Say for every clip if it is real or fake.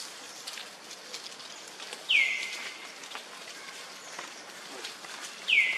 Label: real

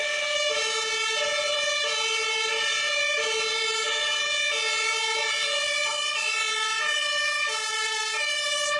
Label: real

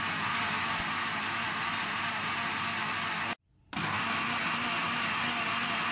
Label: real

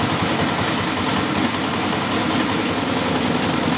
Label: real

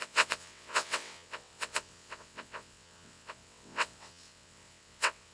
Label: fake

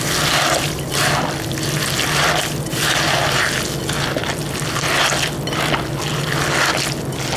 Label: real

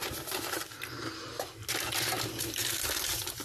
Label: real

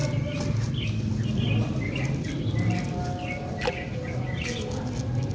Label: real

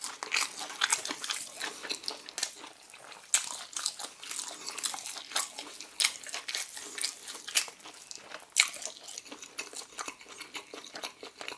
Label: real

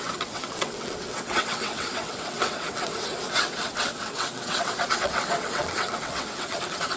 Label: fake